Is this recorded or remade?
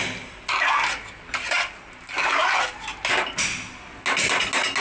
recorded